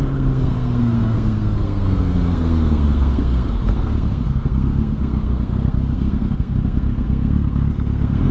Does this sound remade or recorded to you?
remade